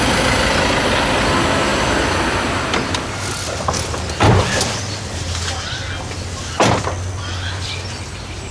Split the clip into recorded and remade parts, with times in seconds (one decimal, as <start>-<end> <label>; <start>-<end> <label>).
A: 0.0-8.5 recorded